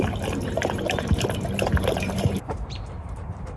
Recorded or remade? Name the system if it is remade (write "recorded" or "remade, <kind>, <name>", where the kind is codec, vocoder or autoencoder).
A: remade, vocoder, BigVGAN v2